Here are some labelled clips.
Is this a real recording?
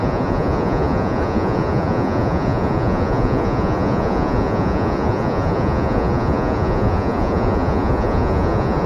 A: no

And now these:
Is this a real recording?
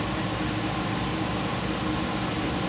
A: yes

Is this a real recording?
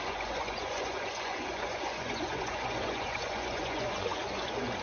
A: no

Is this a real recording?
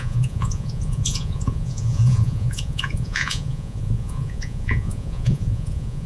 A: no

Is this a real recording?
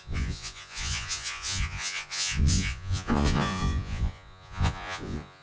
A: no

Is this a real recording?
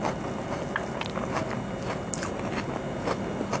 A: yes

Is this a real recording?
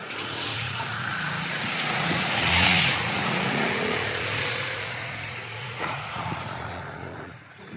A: no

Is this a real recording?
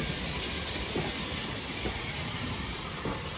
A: yes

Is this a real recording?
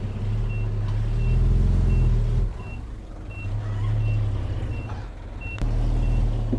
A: yes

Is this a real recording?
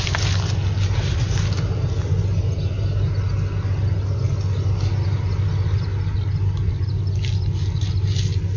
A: yes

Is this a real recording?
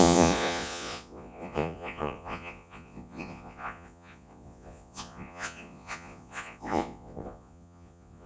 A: no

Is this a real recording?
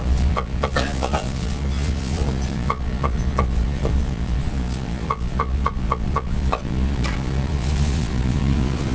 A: no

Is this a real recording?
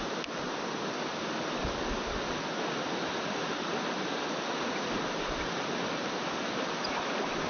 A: yes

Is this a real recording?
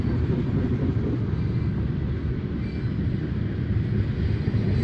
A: yes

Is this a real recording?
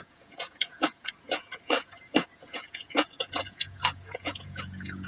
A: no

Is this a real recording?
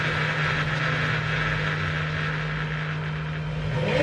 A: yes